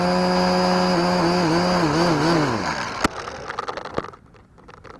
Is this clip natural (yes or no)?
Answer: yes